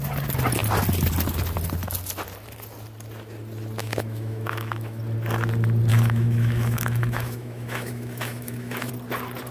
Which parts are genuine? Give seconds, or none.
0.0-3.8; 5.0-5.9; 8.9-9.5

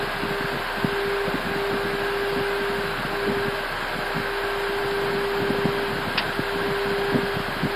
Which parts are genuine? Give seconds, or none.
0.0-7.8

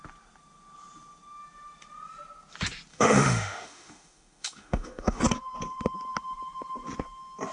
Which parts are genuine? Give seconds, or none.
0.0-2.9; 5.2-7.5

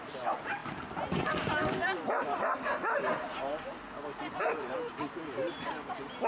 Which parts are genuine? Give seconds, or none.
0.0-6.3

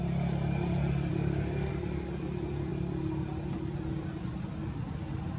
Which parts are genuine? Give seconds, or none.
0.0-1.1; 1.7-5.4

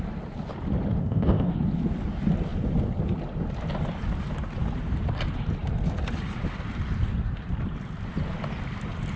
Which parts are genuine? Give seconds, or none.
0.0-1.0; 1.5-9.2